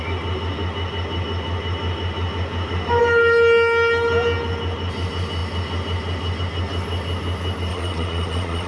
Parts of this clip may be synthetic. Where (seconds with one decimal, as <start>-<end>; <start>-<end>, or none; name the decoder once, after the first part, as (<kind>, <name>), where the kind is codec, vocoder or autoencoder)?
7.7-8.7 (vocoder, Vocos)